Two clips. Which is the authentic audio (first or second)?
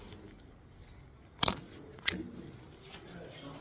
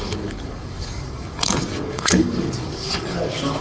first